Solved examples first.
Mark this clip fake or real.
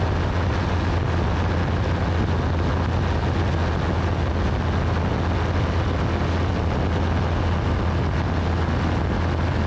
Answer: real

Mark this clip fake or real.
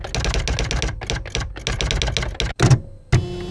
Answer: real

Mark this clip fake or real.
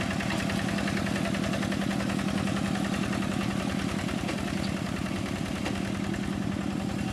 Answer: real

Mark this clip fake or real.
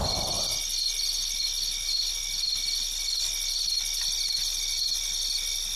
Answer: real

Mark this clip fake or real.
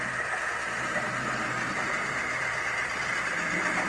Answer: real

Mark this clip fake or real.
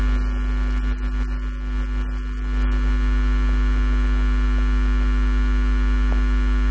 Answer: real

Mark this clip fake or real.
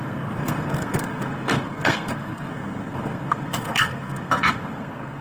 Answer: fake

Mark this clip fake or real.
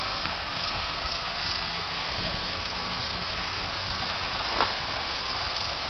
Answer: fake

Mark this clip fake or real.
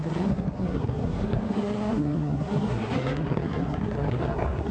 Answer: fake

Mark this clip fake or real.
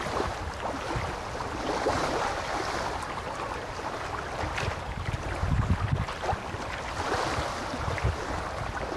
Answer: real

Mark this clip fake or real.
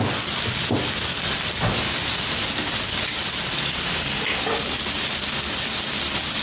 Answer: real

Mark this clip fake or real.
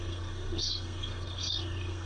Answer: fake